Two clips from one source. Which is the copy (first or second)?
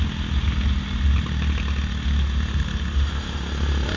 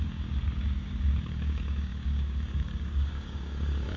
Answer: second